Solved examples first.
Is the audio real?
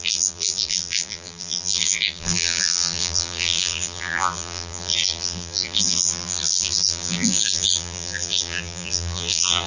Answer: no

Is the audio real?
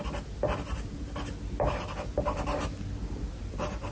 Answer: yes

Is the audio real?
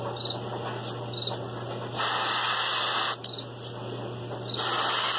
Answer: yes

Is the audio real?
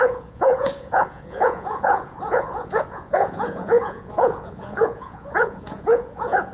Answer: no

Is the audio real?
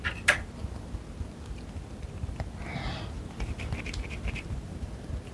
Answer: yes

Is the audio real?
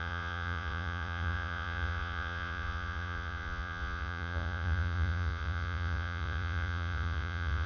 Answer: no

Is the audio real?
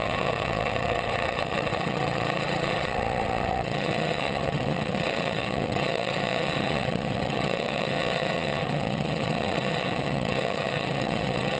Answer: no